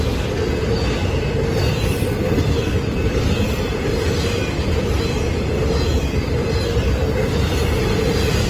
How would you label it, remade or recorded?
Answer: recorded